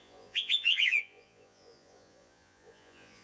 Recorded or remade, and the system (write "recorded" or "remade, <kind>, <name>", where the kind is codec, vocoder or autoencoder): remade, vocoder, Vocos